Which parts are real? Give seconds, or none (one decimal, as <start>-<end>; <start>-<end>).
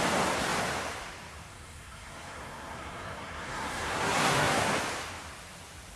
0.0-1.5; 4.7-6.0